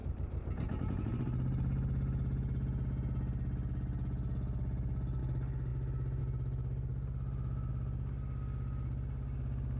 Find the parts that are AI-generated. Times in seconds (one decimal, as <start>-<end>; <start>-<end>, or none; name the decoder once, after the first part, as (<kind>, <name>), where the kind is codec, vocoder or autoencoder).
none